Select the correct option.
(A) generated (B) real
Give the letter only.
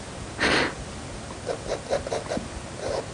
B